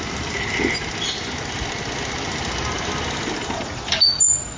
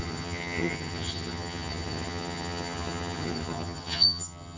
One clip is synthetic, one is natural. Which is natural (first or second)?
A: first